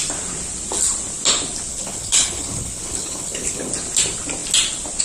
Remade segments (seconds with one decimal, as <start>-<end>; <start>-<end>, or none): 1.7-3.7